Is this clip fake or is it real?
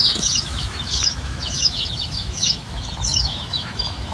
fake